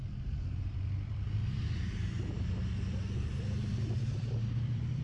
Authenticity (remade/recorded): remade